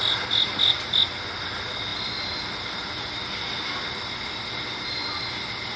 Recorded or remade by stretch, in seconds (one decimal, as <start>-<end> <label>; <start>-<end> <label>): 0.0-5.8 recorded